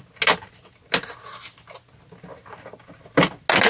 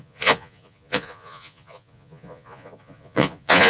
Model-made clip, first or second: second